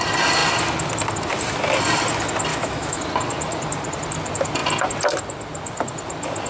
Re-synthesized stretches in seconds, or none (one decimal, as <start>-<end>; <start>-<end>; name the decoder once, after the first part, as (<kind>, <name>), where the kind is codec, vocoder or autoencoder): 2.5-3.0 (autoencoder, DAC-VAE)